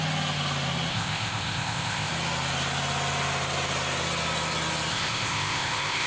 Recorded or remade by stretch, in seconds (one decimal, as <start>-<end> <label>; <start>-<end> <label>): 0.0-0.9 recorded; 0.9-2.1 remade; 2.1-4.9 recorded; 4.9-6.1 remade